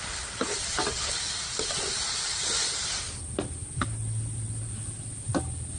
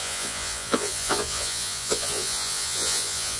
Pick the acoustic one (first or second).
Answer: first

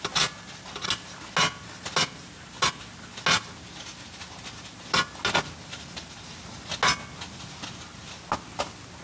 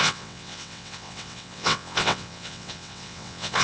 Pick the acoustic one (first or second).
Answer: first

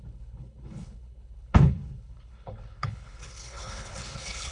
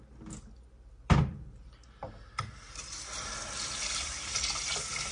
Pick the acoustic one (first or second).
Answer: second